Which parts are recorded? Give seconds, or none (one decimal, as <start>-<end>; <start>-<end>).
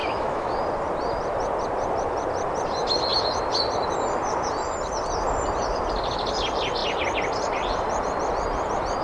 0.6-9.0